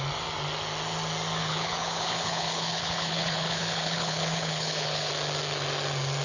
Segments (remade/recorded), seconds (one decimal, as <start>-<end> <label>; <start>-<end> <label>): 0.0-1.4 recorded; 1.4-5.1 remade; 5.1-6.2 recorded